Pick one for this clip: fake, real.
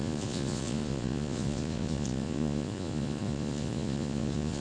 fake